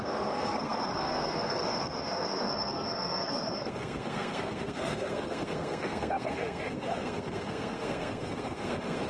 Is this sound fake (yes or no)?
yes